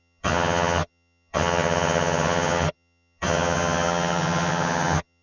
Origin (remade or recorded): remade